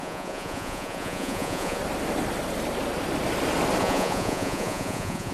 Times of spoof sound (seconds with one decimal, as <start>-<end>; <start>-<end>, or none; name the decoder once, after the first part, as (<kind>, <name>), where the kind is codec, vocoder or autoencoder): 0.0-1.8 (vocoder, Vocos); 3.8-5.3